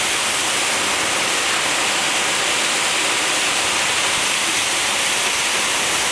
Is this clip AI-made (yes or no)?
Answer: no